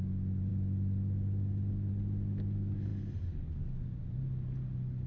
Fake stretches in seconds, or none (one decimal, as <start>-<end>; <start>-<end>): none